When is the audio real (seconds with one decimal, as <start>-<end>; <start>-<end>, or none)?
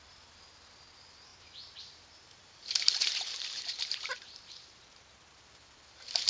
0.0-1.3; 5.1-6.3